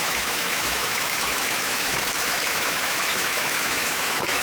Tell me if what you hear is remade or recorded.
remade